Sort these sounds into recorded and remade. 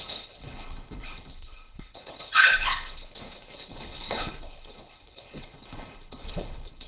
remade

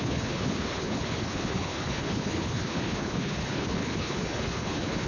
remade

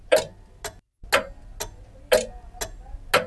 recorded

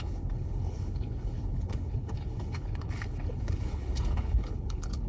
remade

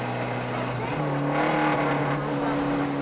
recorded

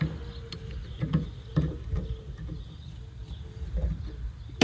recorded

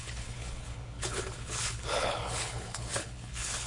remade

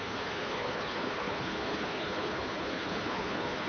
remade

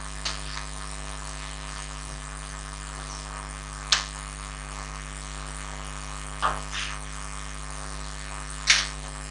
recorded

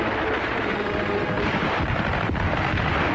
recorded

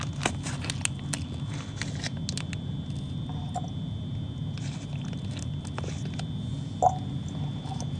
recorded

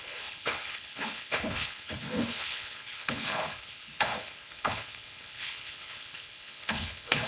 remade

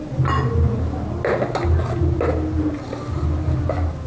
recorded